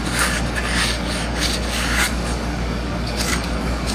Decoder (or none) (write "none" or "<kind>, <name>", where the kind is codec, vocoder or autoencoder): codec, DAC